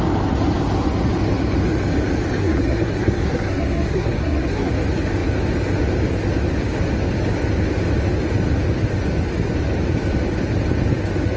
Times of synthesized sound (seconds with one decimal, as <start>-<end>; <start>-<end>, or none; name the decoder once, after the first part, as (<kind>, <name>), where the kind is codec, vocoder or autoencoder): 2.4-4.7 (codec, SNAC)